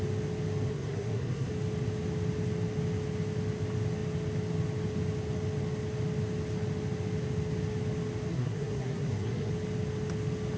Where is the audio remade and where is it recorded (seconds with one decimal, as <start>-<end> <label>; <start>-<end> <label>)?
0.0-0.7 recorded; 0.7-1.5 remade; 1.5-8.3 recorded; 8.3-9.5 remade; 9.5-10.6 recorded